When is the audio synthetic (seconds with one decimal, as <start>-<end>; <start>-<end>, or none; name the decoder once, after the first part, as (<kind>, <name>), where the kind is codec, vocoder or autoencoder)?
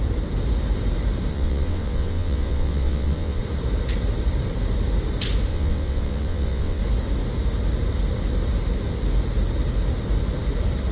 1.3-3.4 (vocoder, WaveNeXt); 5.5-6.8